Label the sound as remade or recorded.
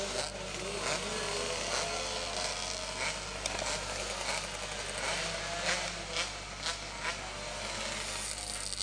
recorded